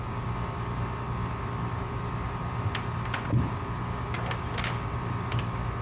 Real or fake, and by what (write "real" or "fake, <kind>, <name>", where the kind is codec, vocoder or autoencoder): real